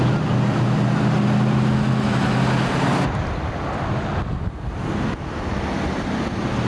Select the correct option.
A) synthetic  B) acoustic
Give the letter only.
B